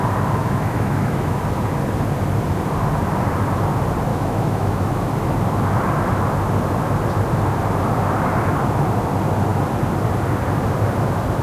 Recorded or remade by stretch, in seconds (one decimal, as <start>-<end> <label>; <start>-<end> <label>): 0.0-0.4 recorded; 0.4-1.4 remade; 1.4-4.1 recorded; 4.1-5.1 remade; 5.1-11.4 recorded